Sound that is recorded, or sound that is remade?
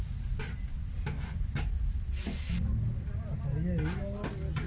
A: recorded